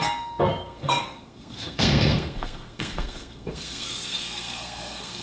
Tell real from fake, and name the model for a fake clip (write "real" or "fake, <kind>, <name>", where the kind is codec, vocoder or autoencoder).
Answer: fake, codec, SNAC